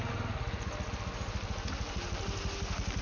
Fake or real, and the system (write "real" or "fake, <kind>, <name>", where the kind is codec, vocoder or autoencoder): real